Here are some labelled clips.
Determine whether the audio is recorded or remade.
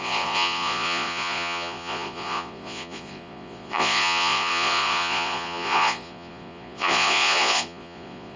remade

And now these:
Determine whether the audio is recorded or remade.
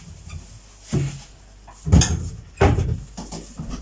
recorded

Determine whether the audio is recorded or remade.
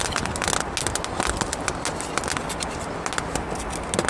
recorded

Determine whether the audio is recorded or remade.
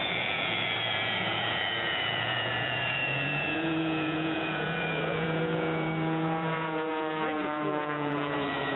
remade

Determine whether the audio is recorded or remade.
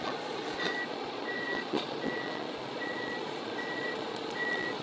remade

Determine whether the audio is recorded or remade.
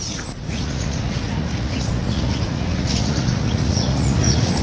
remade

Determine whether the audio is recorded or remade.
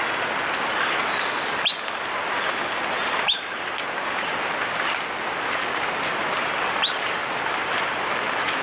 recorded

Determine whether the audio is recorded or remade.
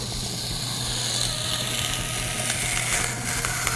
recorded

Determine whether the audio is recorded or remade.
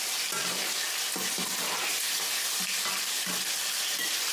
recorded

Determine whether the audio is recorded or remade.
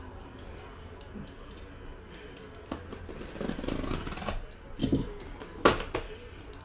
recorded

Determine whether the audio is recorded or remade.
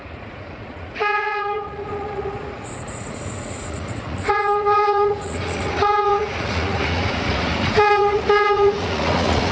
remade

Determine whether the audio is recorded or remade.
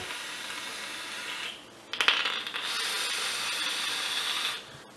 recorded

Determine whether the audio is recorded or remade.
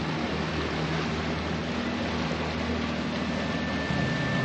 recorded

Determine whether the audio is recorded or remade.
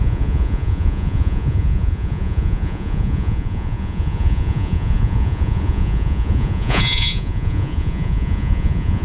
remade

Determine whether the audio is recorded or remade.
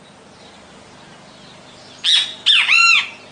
recorded